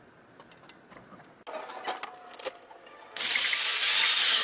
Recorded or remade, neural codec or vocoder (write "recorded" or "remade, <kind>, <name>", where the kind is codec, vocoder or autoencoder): recorded